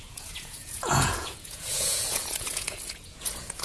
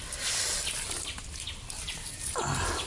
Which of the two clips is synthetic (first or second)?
first